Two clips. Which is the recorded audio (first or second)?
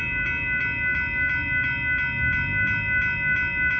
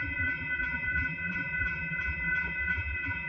first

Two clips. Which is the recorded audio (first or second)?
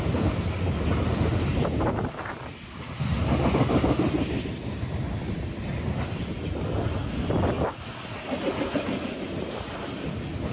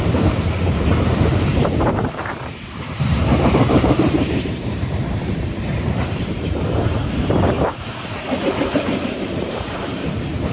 first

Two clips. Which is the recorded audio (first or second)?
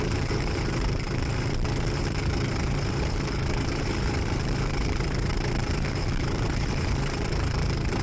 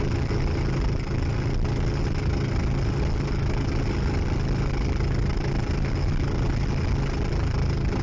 second